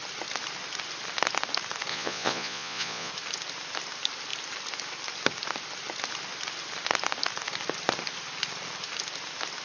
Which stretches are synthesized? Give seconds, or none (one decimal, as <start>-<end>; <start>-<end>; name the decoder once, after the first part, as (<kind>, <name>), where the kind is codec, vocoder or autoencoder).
1.9-3.1 (vocoder, Vocos)